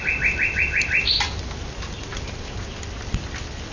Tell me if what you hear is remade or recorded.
recorded